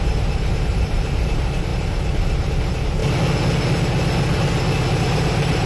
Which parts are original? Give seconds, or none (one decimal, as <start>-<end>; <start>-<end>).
3.0-5.0